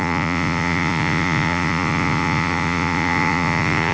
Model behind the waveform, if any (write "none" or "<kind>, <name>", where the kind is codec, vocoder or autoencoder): vocoder, Vocos